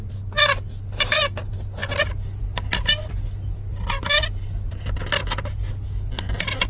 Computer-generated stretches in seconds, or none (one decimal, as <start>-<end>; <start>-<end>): none